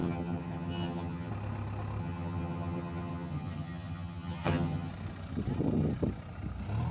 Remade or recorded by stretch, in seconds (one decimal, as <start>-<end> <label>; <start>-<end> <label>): 0.0-1.3 remade; 1.3-2.0 recorded; 2.0-4.9 remade; 4.9-6.9 recorded